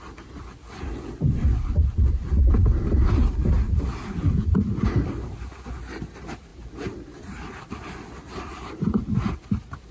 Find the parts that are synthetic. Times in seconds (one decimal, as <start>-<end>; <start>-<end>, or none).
6.5-9.3

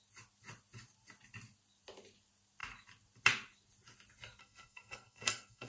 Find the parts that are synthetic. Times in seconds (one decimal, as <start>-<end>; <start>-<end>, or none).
4.4-5.7